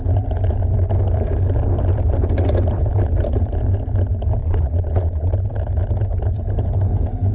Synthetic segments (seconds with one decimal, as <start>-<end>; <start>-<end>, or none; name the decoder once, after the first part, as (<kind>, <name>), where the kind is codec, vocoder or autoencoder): 4.4-5.3 (vocoder, Vocos)